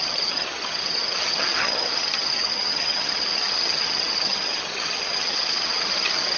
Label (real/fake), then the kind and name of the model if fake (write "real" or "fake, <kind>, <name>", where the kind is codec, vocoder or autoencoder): fake, vocoder, HiFi-GAN